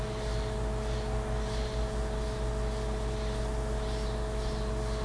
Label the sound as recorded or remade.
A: recorded